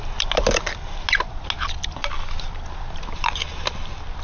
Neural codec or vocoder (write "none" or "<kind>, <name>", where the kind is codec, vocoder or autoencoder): none